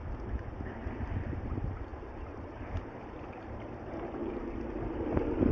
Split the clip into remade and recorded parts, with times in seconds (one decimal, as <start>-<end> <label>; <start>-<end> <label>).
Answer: 0.0-1.0 recorded; 1.0-5.5 remade